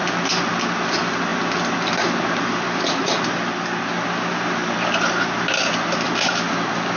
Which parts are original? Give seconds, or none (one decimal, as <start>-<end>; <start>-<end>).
0.0-7.0